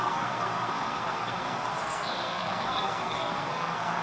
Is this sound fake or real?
fake